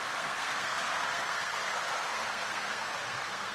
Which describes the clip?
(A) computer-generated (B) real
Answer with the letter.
A